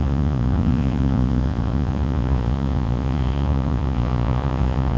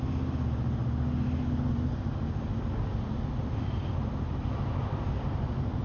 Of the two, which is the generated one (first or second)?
first